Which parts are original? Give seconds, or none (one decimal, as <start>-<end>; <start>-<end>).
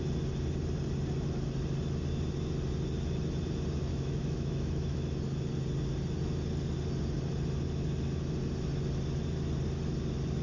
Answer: 0.0-3.9; 5.2-10.4